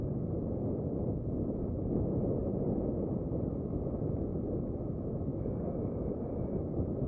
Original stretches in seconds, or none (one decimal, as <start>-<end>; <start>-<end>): 0.0-5.3; 6.1-7.1